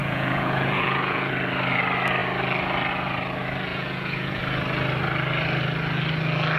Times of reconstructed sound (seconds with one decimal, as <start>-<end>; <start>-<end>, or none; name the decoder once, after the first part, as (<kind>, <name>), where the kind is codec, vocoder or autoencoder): 0.0-1.3 (vocoder, Vocos); 3.7-4.4